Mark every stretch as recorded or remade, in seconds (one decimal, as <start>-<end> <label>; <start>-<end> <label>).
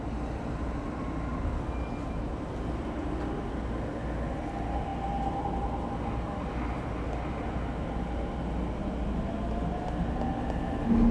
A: 0.0-11.1 recorded